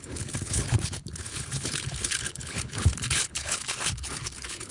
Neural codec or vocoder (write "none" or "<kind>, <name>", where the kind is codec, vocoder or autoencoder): codec, HILCodec